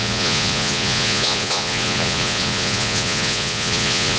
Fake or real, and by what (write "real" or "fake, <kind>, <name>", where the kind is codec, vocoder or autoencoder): fake, vocoder, Vocos